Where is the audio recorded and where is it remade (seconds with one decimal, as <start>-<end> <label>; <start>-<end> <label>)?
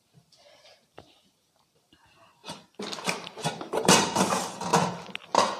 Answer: 0.0-2.4 remade; 2.4-3.4 recorded; 3.4-4.7 remade; 4.7-5.6 recorded